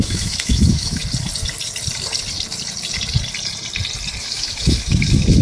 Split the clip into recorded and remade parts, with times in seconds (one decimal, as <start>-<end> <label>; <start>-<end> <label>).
0.0-1.0 remade; 1.0-4.2 recorded; 4.2-5.4 remade